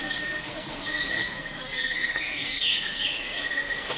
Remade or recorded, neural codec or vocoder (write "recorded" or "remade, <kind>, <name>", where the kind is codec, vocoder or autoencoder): remade, codec, SNAC